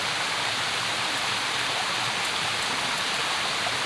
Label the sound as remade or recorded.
recorded